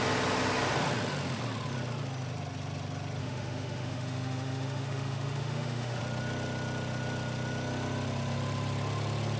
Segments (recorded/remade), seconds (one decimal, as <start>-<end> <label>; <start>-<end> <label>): 0.0-3.2 recorded; 3.2-6.0 remade; 6.0-9.4 recorded